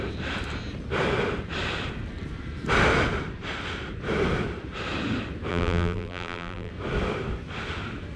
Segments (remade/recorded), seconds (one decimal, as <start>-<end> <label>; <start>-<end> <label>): 0.0-5.5 recorded; 5.5-6.7 remade; 6.7-8.2 recorded